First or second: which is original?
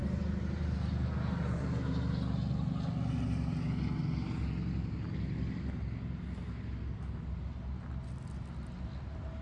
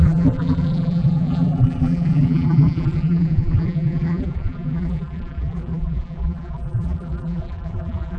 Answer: first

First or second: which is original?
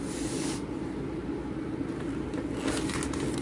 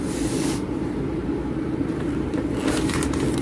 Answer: first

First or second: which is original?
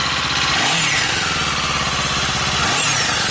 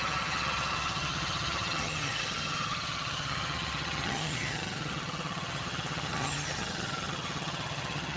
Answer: first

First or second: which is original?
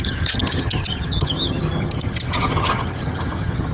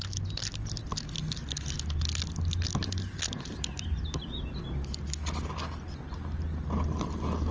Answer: second